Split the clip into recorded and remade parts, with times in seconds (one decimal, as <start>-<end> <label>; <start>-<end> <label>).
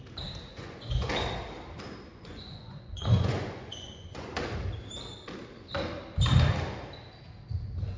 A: 0.0-0.5 recorded; 0.5-1.1 remade; 1.1-2.1 recorded; 2.1-4.3 remade; 4.3-8.0 recorded